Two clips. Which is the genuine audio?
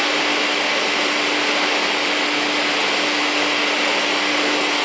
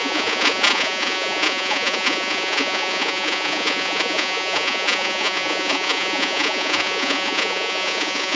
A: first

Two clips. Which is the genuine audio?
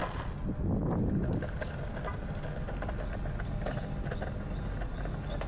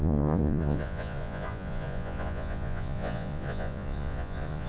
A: first